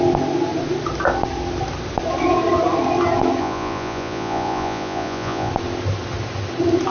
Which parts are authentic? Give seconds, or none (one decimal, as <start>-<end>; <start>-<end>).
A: 0.0-3.4; 5.5-6.9